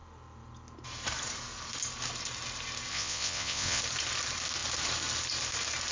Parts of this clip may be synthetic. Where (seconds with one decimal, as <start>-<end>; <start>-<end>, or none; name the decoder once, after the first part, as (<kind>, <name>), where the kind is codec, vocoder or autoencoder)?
2.9-3.8 (vocoder, WaveNeXt)